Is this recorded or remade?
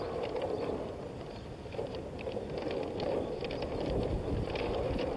recorded